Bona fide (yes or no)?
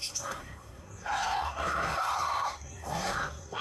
no